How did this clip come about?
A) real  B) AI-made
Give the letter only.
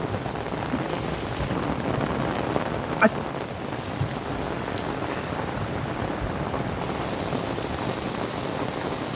A